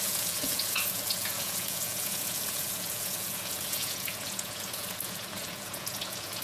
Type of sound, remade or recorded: remade